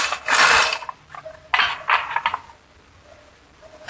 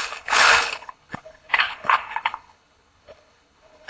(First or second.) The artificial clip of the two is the second